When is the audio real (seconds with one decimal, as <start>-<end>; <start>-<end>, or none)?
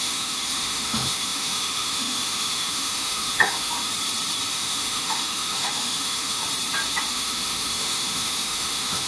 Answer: 3.9-4.5; 6.4-7.1